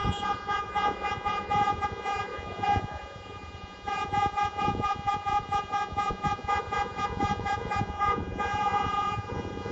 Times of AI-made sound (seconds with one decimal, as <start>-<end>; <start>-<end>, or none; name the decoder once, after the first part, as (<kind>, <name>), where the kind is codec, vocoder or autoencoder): 0.0-9.7 (vocoder, Vocos)